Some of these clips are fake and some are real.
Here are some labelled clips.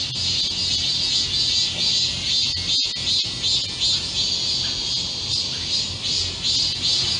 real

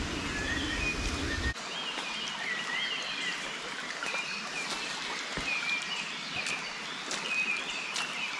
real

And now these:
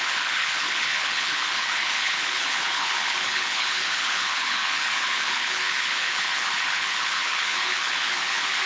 fake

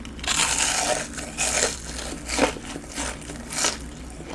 real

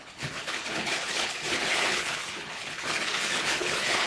fake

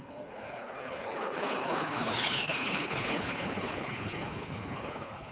fake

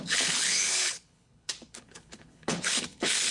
fake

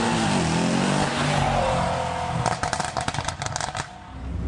real